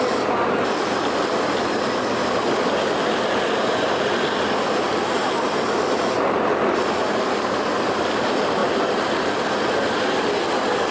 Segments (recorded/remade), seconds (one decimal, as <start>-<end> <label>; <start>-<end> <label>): 0.0-10.9 recorded